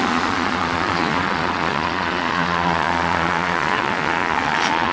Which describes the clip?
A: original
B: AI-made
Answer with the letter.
B